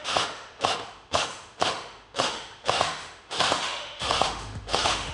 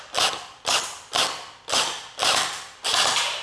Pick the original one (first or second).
second